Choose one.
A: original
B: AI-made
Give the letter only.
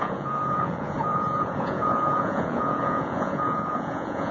B